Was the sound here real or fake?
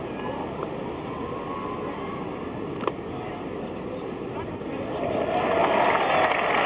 real